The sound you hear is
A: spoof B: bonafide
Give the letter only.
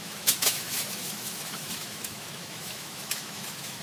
A